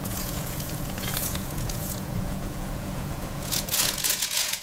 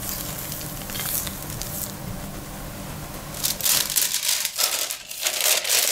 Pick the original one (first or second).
second